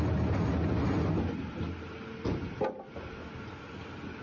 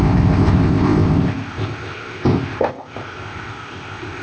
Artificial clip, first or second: second